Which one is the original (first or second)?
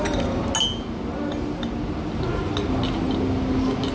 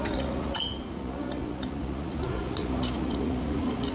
first